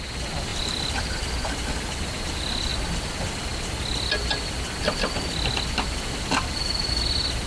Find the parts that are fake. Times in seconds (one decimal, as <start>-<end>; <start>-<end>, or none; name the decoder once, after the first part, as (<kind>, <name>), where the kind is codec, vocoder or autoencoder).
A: 0.5-1.1 (vocoder, BigVGAN v2)